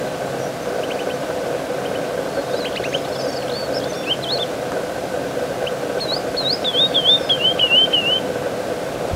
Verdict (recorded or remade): recorded